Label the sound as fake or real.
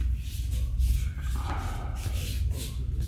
real